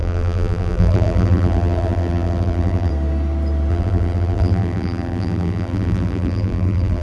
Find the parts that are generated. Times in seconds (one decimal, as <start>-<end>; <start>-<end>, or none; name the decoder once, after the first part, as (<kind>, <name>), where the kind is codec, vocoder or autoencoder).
0.0-2.9 (vocoder, BigVGAN v2); 3.7-7.0